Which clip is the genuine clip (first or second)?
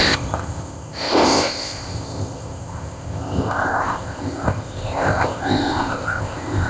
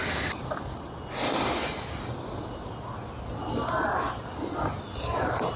second